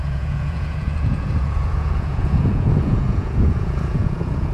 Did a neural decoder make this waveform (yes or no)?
yes